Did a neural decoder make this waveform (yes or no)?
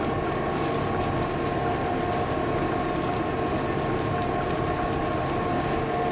no